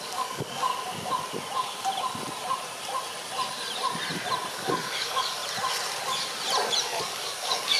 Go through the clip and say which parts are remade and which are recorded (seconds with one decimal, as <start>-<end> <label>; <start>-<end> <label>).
0.0-0.7 remade; 0.7-4.5 recorded; 4.5-5.4 remade; 5.4-6.8 recorded; 6.8-7.8 remade

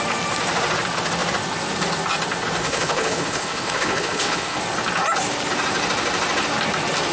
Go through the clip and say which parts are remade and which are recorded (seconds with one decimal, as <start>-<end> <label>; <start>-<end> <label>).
0.0-2.6 recorded; 2.6-4.6 remade; 4.6-7.1 recorded

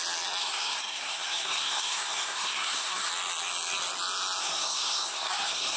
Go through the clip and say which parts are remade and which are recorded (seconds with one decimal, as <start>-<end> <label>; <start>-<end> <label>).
0.0-0.4 recorded; 0.4-3.1 remade; 3.1-4.4 recorded; 4.4-5.8 remade

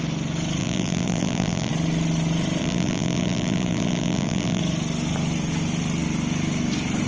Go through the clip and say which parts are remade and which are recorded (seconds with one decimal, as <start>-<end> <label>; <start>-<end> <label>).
0.0-0.6 recorded; 0.6-1.7 remade; 1.7-2.6 recorded; 2.6-4.6 remade; 4.6-7.1 recorded

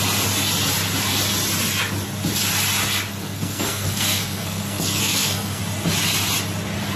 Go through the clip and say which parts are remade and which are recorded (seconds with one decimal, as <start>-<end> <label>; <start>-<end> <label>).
0.0-3.1 recorded; 3.1-5.6 remade; 5.6-7.0 recorded

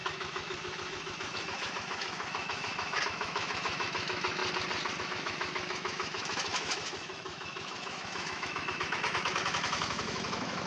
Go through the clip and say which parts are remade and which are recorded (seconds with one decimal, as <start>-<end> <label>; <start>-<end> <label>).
0.0-4.4 remade; 4.4-5.0 recorded; 5.0-10.7 remade